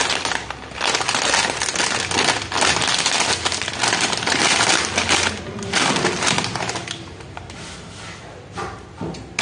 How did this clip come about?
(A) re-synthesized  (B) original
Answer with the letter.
B